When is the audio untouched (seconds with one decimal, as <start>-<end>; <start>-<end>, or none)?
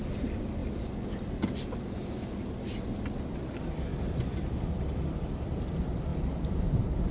0.6-3.1